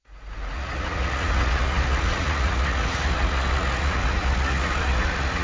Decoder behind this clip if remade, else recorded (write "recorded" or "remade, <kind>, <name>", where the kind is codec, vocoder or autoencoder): remade, vocoder, Vocos